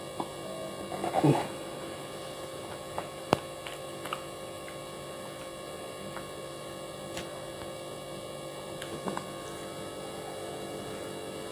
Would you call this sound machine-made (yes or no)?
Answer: no